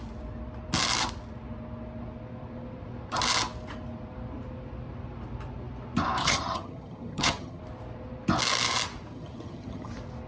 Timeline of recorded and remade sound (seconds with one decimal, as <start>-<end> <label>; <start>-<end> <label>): 0.0-6.2 recorded; 6.2-7.6 remade; 7.6-9.1 recorded; 9.1-9.9 remade; 9.9-10.3 recorded